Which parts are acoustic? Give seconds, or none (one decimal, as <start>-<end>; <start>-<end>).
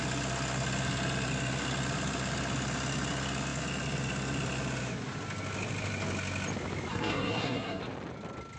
0.0-6.9; 7.8-8.6